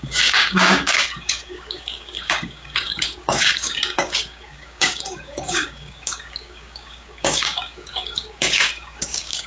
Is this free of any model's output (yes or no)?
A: no